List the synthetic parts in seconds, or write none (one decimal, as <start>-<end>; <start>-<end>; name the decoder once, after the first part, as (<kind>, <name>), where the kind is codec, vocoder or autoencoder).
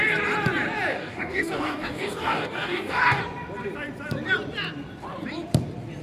0.9-3.2 (codec, DAC)